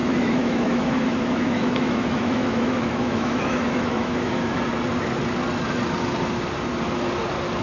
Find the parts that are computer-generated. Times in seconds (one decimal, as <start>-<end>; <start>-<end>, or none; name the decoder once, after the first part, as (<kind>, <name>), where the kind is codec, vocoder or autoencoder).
0.0-4.6 (autoencoder, DAC-VAE)